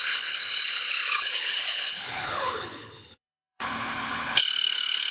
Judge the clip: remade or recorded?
remade